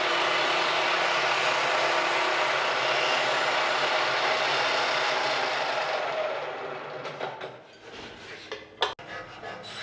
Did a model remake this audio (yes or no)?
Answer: no